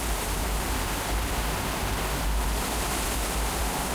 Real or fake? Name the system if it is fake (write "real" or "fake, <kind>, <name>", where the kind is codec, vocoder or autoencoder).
real